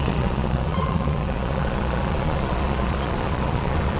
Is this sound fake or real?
fake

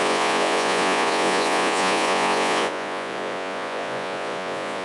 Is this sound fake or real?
fake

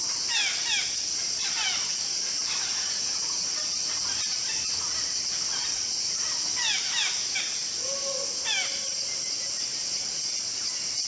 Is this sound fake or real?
real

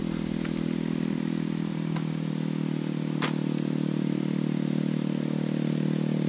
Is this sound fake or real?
real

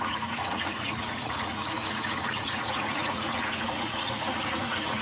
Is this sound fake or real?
fake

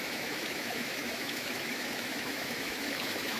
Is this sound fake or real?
fake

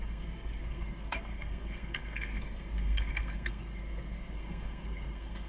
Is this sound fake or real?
fake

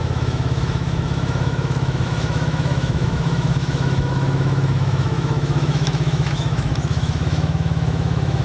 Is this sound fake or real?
fake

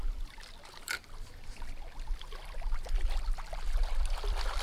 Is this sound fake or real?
real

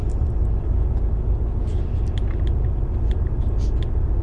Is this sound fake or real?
real